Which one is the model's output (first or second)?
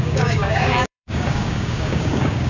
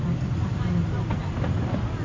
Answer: first